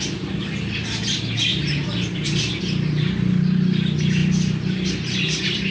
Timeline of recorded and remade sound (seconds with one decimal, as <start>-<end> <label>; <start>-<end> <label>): 0.0-5.7 recorded